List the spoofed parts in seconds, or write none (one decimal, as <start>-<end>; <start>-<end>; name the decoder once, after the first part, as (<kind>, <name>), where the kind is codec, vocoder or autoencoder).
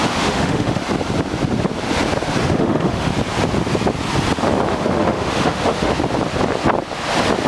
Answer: 0.0-0.8 (autoencoder, DAC-VAE); 2.4-3.1; 4.7-5.9